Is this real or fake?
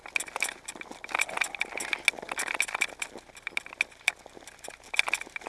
real